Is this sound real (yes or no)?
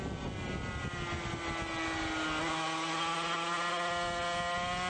yes